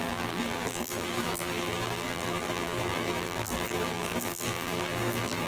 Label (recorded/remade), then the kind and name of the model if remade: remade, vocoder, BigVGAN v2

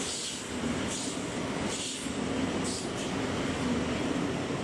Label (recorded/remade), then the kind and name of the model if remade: recorded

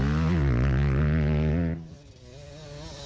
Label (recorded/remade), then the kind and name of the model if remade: recorded